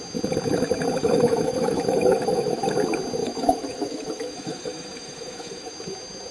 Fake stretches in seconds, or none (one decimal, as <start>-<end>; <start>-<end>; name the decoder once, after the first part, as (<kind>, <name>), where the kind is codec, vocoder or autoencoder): 1.0-2.6 (autoencoder, DAC-VAE); 3.2-5.7